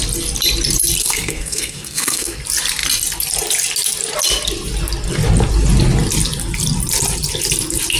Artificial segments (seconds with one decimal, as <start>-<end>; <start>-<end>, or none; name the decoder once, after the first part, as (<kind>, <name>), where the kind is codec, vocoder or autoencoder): 1.0-2.4 (codec, SNAC)